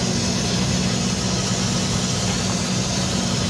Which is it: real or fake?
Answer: real